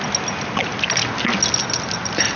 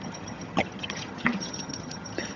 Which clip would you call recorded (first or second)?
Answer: first